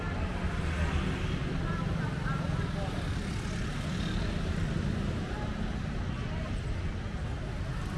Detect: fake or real real